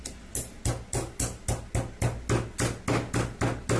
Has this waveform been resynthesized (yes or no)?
no